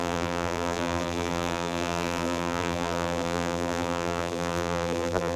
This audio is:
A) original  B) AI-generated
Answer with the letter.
B